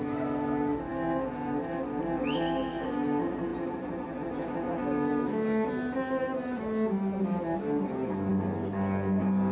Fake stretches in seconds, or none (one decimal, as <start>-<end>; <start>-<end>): none